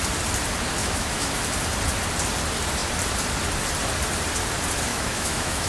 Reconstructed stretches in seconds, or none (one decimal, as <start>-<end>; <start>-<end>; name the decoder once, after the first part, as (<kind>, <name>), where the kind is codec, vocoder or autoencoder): 0.8-1.4 (autoencoder, DAC-VAE); 4.9-5.7